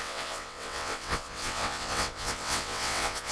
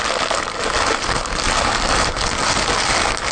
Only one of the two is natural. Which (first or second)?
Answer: second